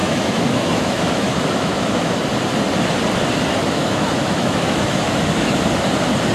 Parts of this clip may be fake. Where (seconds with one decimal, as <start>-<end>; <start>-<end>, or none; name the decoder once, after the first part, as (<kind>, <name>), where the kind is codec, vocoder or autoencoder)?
0.0-2.1 (autoencoder, DAC-VAE); 3.6-5.6